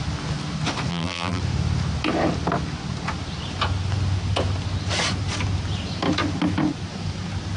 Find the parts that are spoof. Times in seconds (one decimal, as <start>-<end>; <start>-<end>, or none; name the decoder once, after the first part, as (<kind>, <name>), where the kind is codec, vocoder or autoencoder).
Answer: 0.9-1.4 (vocoder, BigVGAN v2)